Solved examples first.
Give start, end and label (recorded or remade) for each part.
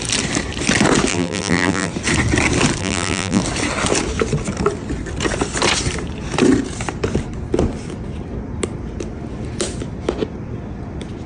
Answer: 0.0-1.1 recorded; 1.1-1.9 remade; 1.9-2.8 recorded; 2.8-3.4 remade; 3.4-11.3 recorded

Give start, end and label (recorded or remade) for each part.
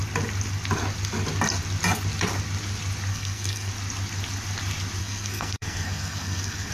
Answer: 0.0-3.1 recorded; 3.1-3.7 remade; 3.7-5.0 recorded; 5.0-6.7 remade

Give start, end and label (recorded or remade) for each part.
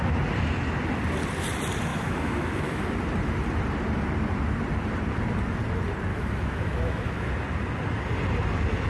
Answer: 0.0-1.9 recorded; 1.9-2.9 remade; 2.9-6.1 recorded; 6.1-7.3 remade; 7.3-8.9 recorded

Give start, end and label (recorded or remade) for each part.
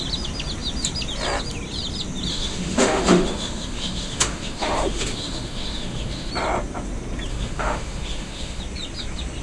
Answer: 0.0-2.3 recorded; 2.3-6.3 remade; 6.3-7.3 recorded; 7.3-8.6 remade; 8.6-9.4 recorded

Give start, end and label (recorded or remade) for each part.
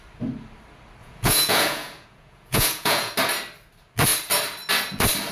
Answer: 0.0-1.0 recorded; 1.0-3.1 remade; 3.1-5.3 recorded